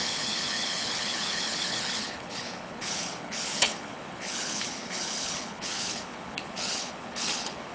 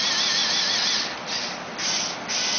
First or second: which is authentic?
second